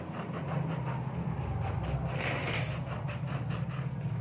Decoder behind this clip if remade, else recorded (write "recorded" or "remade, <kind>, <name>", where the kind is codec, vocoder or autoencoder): recorded